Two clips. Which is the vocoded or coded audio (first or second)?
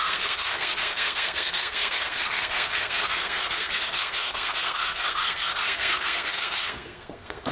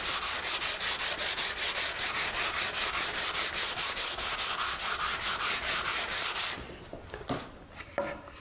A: first